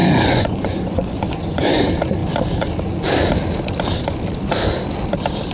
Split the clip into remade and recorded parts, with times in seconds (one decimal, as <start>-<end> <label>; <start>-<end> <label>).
0.0-1.8 remade; 1.8-5.5 recorded